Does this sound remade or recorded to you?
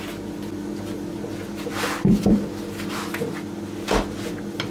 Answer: recorded